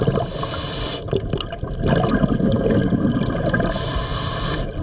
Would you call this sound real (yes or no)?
yes